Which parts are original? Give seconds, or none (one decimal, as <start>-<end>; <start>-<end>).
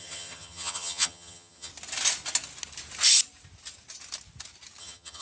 1.7-4.8